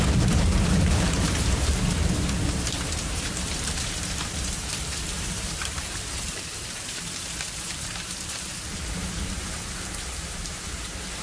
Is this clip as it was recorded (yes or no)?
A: no